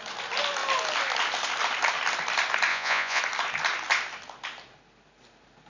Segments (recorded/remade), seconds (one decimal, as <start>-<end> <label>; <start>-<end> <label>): 0.0-2.7 recorded; 2.7-3.2 remade; 3.2-5.7 recorded